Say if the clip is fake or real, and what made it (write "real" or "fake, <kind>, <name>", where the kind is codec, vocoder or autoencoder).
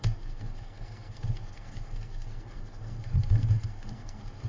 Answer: fake, codec, SNAC